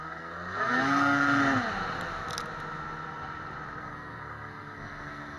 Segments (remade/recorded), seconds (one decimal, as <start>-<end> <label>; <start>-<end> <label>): 0.0-1.4 remade; 1.4-3.8 recorded; 3.8-5.4 remade